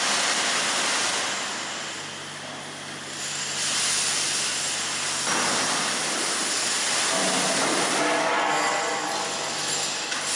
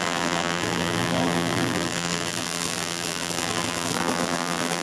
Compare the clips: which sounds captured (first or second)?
first